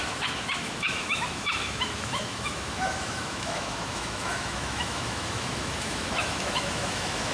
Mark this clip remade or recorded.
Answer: remade